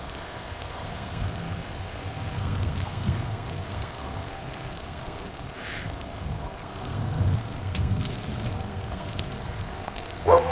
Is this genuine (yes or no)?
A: no